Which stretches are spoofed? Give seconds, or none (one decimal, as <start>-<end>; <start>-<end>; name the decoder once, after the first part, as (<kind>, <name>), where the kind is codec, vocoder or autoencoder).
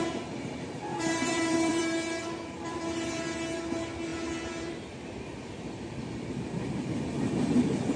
0.9-1.8 (vocoder, BigVGAN v2)